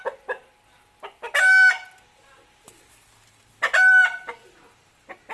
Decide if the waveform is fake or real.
real